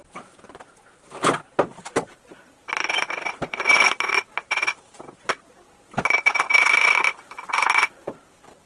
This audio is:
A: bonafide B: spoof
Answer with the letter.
A